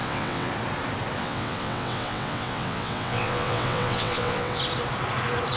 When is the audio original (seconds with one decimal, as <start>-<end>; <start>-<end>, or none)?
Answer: 0.5-1.2; 4.6-5.6